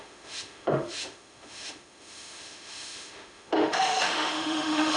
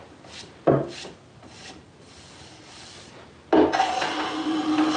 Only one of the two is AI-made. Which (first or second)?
first